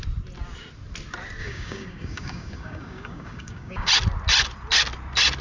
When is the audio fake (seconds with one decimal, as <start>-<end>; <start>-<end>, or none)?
1.4-3.9

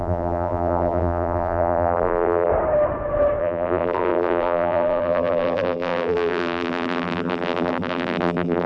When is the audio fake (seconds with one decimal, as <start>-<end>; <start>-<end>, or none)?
0.0-2.5; 3.4-8.7

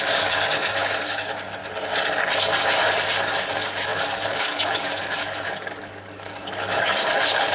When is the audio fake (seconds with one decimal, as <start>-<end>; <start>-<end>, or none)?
0.0-1.6; 3.5-7.5